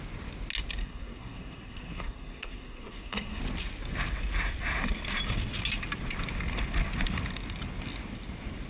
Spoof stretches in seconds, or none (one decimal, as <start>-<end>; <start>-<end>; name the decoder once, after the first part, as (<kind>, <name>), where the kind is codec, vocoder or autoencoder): 0.8-3.4 (codec, SNAC)